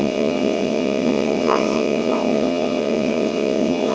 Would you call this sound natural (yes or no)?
no